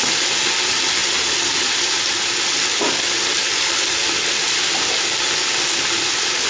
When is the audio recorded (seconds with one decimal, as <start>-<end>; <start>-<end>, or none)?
0.0-6.5